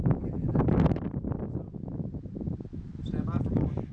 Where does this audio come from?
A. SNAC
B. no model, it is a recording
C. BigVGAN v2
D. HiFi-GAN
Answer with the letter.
B